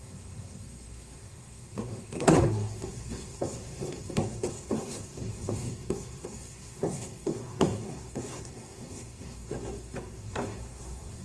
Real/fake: fake